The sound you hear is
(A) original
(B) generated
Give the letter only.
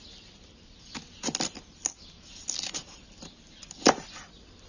A